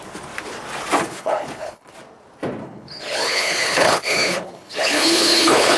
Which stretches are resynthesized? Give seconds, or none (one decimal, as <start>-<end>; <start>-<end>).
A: 1.0-1.9; 2.6-5.8